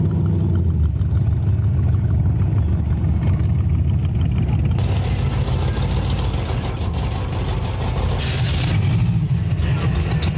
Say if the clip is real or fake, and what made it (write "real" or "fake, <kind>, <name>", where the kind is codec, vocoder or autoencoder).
real